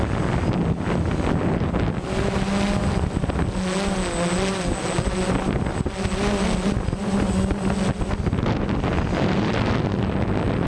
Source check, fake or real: real